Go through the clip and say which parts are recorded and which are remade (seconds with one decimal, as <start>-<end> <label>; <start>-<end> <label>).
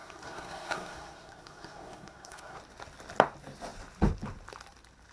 0.0-2.6 remade; 2.6-5.1 recorded